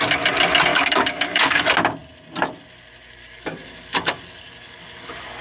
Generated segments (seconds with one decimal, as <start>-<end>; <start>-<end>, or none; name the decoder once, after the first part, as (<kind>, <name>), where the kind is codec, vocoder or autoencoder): 0.7-1.6 (codec, DAC); 3.2-5.4